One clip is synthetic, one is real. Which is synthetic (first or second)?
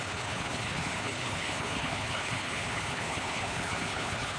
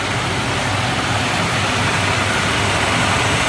first